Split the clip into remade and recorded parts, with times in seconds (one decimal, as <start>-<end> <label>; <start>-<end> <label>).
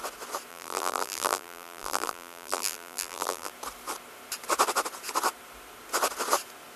0.0-0.5 recorded; 0.5-3.5 remade; 3.5-6.8 recorded